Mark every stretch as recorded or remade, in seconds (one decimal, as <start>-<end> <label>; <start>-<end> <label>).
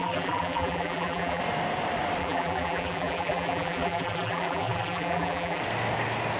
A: 0.0-1.4 remade; 1.4-2.2 recorded; 2.2-5.6 remade; 5.6-6.4 recorded